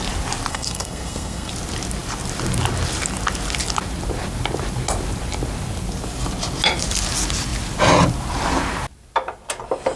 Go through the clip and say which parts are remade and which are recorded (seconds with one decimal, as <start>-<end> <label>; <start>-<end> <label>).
0.0-0.5 recorded; 0.5-1.5 remade; 1.5-10.0 recorded